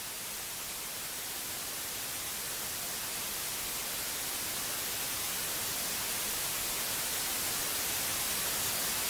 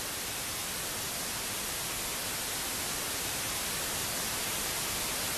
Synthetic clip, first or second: second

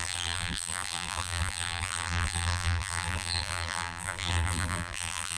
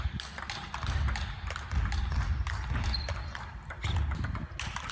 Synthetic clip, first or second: first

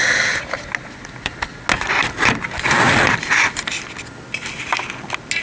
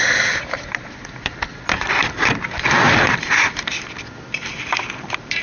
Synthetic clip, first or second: second